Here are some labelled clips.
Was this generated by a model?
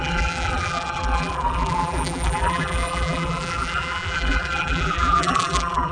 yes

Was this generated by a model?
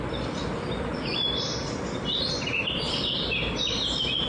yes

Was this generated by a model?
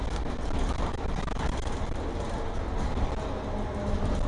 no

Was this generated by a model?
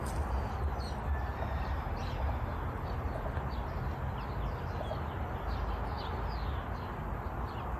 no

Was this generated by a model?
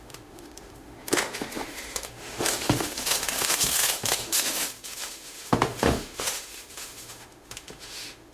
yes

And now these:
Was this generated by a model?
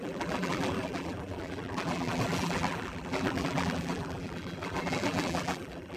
yes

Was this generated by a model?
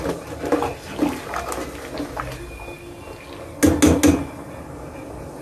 no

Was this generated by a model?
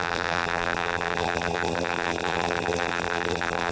yes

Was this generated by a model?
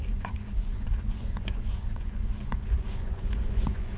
yes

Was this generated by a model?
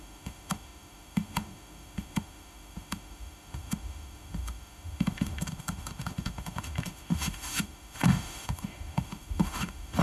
yes